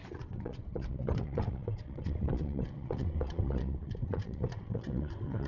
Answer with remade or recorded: remade